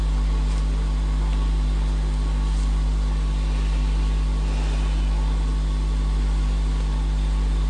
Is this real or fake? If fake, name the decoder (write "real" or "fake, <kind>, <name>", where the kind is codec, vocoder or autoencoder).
real